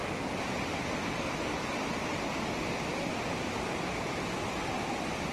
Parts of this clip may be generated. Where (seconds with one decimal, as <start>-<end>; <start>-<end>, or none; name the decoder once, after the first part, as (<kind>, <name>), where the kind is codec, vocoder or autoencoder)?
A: none